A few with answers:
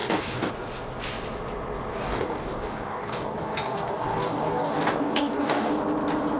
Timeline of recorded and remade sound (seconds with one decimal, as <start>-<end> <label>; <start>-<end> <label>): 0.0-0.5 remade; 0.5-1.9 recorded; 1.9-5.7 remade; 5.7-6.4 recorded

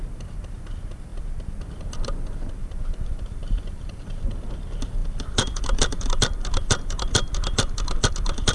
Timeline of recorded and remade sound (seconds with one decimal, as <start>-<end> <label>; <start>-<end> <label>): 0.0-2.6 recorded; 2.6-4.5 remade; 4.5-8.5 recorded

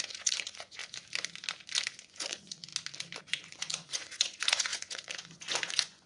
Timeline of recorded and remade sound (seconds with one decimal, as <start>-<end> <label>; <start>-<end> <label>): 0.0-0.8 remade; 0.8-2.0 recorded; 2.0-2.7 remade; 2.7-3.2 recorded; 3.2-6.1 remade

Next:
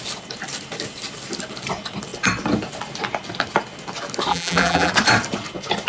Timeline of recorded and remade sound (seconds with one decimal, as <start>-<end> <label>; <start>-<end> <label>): 0.0-4.3 recorded; 4.3-4.9 remade; 4.9-5.9 recorded